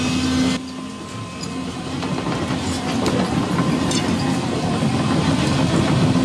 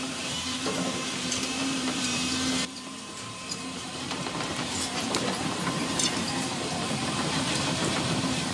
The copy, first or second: second